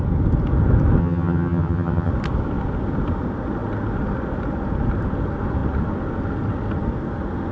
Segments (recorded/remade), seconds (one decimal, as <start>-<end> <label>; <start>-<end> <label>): 0.0-1.0 recorded; 1.0-2.1 remade; 2.1-7.5 recorded